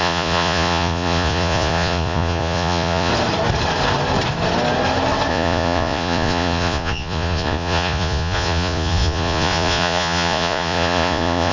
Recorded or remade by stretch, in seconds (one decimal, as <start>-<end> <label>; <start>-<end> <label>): 0.0-3.1 remade; 3.1-5.3 recorded; 5.3-11.5 remade